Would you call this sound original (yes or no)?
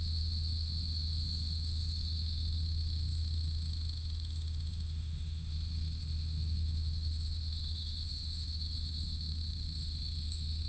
no